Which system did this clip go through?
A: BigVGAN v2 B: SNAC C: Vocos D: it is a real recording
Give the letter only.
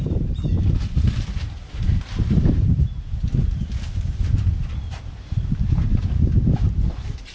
A